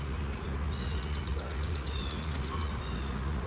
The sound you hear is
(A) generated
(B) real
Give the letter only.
A